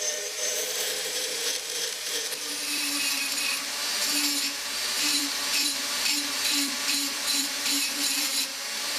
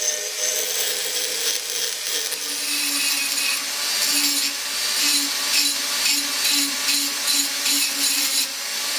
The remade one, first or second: first